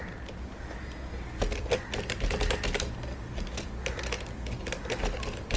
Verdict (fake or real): real